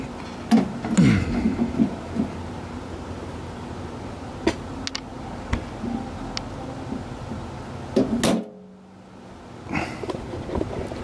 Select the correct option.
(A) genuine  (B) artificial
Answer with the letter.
A